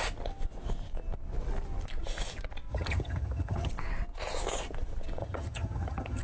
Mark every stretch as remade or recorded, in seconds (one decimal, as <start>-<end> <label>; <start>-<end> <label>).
0.0-2.7 recorded; 2.7-3.7 remade; 3.7-5.2 recorded; 5.2-6.2 remade